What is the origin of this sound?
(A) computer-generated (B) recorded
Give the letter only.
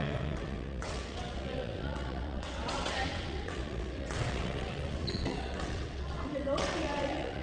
A